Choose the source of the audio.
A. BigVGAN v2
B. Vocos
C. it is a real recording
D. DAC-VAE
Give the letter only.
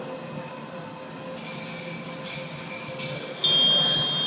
C